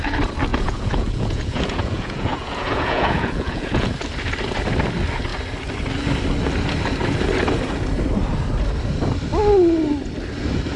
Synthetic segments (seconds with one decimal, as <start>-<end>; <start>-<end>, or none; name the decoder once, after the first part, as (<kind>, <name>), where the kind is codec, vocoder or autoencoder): 0.5-3.9 (vocoder, Vocos)